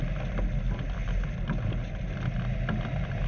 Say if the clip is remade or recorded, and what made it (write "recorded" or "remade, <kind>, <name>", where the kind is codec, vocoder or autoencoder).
recorded